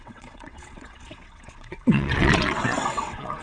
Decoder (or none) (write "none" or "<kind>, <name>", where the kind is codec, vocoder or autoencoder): vocoder, WaveNeXt